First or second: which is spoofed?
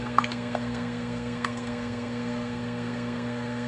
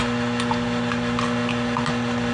first